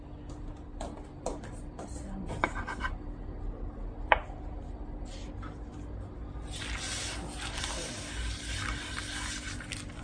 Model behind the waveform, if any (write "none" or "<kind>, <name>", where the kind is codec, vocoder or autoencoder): none